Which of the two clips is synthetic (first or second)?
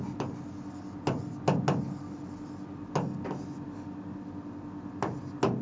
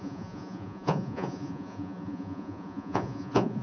second